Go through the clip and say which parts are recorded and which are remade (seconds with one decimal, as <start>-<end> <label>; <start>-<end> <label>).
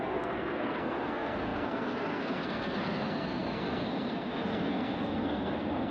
0.0-5.9 remade